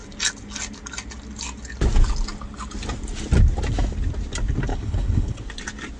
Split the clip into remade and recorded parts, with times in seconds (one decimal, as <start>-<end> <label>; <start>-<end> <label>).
0.0-4.7 recorded; 4.7-5.4 remade; 5.4-6.0 recorded